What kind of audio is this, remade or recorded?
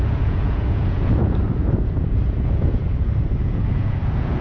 remade